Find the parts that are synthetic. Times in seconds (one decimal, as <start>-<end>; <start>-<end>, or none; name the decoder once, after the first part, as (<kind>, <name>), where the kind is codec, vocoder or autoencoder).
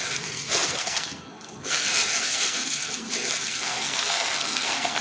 0.0-5.0 (codec, SNAC)